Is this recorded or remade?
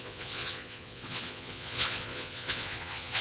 remade